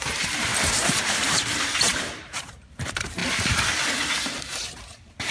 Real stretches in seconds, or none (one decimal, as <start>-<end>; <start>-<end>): 3.2-4.4